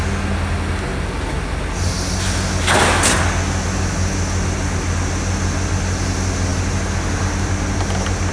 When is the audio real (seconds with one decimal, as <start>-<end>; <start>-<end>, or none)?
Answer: 0.0-8.3